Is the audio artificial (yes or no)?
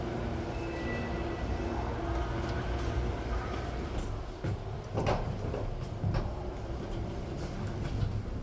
no